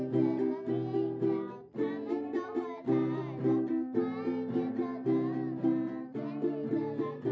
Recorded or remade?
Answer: recorded